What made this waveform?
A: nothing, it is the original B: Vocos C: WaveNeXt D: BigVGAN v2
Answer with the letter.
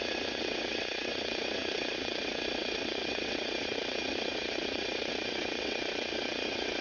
C